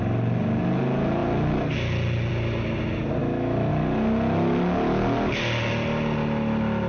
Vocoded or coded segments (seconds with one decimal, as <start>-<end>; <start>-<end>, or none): 3.2-3.7